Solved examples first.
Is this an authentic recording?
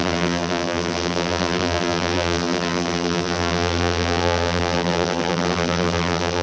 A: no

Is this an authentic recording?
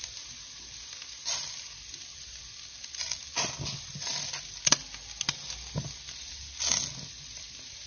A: yes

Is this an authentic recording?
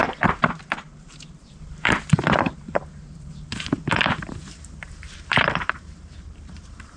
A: no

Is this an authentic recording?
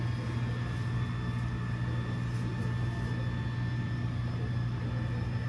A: yes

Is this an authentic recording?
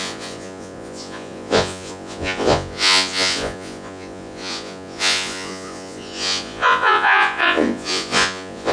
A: no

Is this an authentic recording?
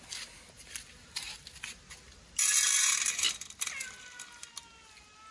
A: yes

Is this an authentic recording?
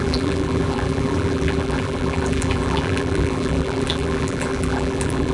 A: no